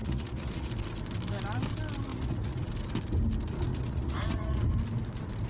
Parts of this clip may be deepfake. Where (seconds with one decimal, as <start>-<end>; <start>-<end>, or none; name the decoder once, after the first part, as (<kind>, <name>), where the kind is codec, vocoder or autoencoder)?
0.0-0.7 (vocoder, Vocos); 2.1-2.7; 3.7-4.6